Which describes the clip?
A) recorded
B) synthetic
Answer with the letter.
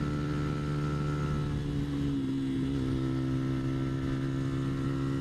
A